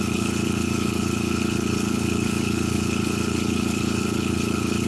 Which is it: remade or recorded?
remade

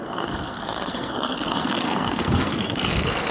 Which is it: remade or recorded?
remade